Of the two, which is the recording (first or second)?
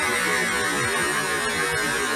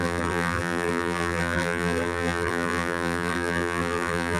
first